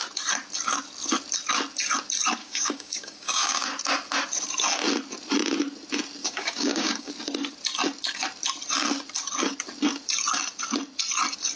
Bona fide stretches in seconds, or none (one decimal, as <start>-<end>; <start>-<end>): 0.0-2.4; 3.7-6.2; 7.1-11.6